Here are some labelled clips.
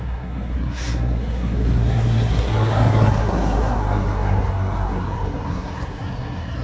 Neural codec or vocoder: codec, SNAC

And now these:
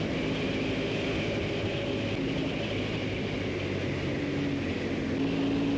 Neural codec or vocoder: none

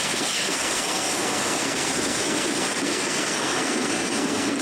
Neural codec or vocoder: codec, SNAC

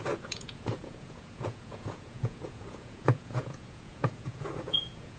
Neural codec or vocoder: vocoder, Vocos